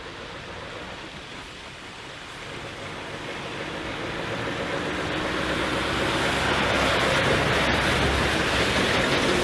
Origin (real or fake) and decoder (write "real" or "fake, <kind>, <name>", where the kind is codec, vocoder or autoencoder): real